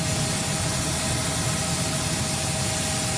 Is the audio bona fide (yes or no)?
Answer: yes